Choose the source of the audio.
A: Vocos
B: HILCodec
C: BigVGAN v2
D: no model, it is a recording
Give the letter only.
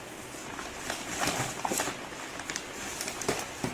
D